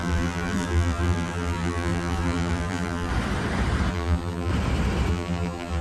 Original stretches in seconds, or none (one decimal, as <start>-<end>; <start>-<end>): 3.1-3.9; 4.5-5.1